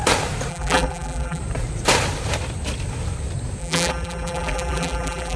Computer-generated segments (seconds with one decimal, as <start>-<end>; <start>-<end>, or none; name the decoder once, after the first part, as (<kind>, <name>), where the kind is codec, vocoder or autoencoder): 0.5-1.4 (vocoder, BigVGAN v2); 3.6-5.4

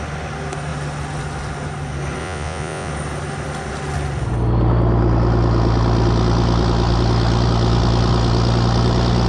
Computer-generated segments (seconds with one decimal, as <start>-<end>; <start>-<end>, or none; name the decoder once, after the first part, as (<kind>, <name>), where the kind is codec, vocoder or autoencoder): 2.2-2.9 (vocoder, Vocos)

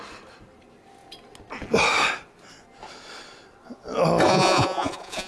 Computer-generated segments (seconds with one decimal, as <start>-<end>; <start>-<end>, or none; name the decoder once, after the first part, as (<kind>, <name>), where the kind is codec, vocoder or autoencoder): 4.3-5.3 (vocoder, Vocos)

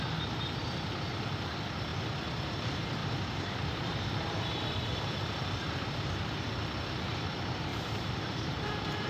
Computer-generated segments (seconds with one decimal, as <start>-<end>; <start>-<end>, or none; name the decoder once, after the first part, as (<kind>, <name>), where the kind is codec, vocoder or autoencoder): 1.9-2.5 (vocoder, BigVGAN v2); 3.0-6.4; 7.7-8.5

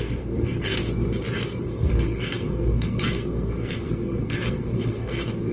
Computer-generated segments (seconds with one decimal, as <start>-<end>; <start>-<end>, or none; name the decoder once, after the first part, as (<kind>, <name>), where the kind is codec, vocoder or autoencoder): 0.0-0.7 (codec, SNAC); 1.6-5.5

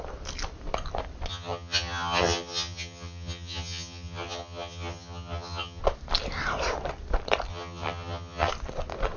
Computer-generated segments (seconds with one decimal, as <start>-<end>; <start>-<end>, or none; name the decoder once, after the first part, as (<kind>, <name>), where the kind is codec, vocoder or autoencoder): 1.3-5.8 (vocoder, HiFi-GAN); 7.5-8.5

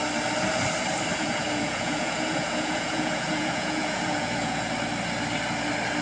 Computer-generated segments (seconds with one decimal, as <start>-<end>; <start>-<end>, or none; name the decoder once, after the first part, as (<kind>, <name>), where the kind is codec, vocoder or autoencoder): 1.1-4.7 (vocoder, Vocos)